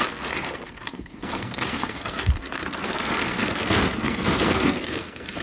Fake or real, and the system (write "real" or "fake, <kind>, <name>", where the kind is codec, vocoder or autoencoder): fake, codec, SNAC